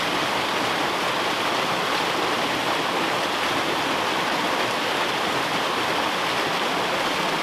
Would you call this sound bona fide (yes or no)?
yes